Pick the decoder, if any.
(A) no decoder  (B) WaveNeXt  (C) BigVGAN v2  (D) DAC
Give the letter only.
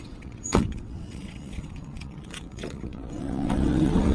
B